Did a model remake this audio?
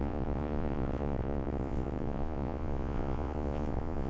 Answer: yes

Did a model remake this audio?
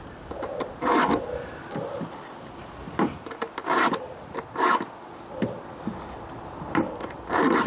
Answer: yes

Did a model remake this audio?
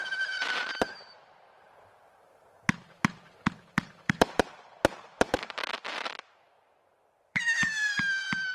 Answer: yes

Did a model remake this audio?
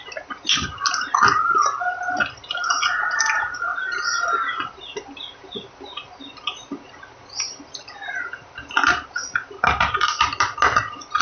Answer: no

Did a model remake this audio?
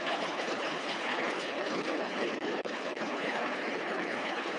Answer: yes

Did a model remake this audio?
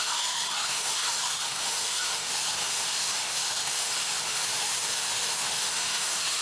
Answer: yes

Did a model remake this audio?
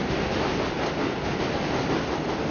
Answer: no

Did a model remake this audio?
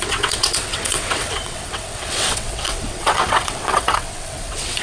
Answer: yes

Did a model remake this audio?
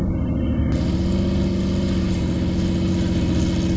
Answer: no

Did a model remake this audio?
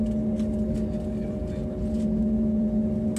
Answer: no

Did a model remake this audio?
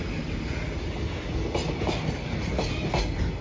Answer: no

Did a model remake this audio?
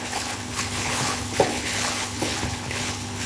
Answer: yes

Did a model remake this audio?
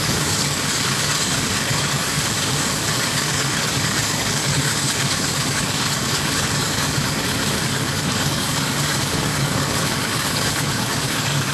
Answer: yes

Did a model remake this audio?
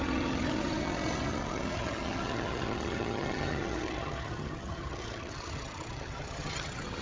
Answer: yes